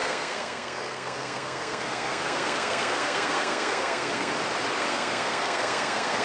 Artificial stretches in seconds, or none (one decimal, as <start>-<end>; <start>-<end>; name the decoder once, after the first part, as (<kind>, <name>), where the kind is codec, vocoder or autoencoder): 0.0-4.3 (codec, SNAC); 4.8-6.2